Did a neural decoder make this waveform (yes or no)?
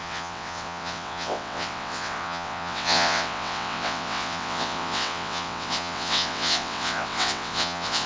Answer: yes